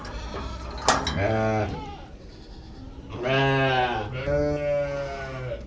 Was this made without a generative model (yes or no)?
yes